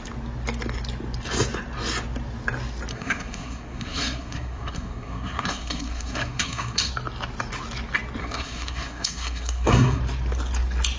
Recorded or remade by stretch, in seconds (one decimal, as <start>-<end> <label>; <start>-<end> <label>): 0.0-2.9 recorded; 2.9-6.9 remade; 6.9-8.2 recorded; 8.2-10.0 remade; 10.0-11.0 recorded